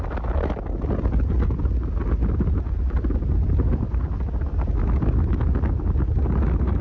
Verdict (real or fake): real